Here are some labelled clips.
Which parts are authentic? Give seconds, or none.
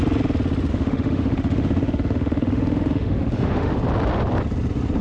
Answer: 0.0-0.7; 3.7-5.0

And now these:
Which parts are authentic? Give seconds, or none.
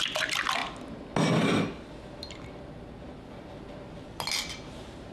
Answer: 0.0-5.1